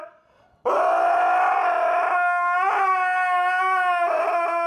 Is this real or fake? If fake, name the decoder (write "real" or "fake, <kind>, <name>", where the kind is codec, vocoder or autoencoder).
real